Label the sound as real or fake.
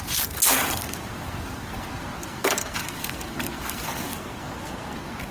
fake